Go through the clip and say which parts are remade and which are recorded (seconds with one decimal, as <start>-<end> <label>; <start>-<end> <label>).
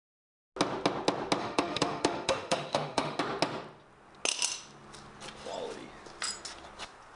0.0-1.4 recorded; 1.4-3.2 remade; 3.2-7.2 recorded